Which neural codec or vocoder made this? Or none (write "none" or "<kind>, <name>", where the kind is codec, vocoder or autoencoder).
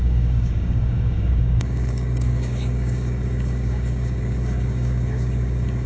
codec, DAC